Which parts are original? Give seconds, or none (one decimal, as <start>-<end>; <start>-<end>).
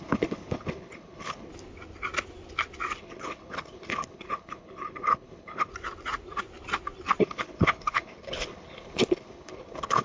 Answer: 1.5-3.0; 5.7-7.2